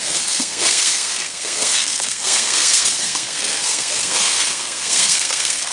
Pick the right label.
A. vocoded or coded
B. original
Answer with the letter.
A